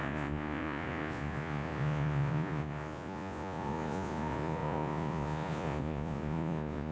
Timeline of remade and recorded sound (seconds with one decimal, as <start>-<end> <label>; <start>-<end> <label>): 0.0-6.9 remade